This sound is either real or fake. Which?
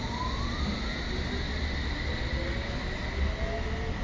real